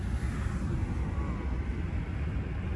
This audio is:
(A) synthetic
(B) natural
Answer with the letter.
B